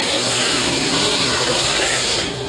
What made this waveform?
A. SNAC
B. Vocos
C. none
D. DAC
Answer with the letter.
A